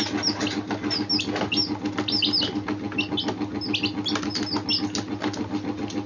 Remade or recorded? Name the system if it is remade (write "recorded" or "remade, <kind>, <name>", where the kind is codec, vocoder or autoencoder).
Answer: recorded